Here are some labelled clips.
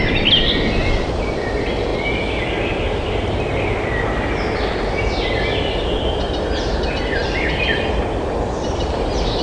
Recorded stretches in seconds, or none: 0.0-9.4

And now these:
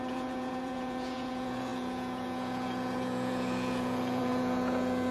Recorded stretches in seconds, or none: none

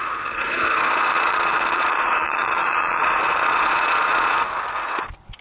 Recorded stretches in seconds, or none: 0.0-1.1; 4.3-5.4

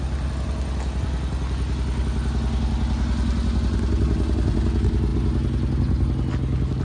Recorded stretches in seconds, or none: 0.0-6.8

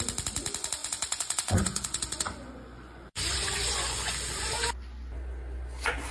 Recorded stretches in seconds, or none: 0.0-0.8; 4.5-6.1

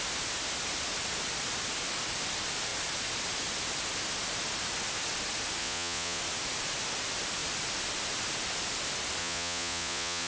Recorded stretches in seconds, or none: 0.0-5.6; 6.2-9.2

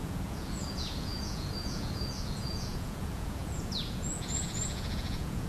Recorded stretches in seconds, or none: none

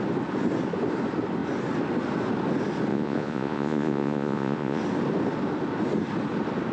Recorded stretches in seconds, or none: 0.0-2.9; 4.8-6.7